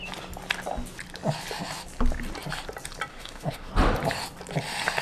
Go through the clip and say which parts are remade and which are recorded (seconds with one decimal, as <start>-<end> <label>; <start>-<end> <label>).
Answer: 0.0-3.1 recorded; 3.1-3.7 remade; 3.7-5.0 recorded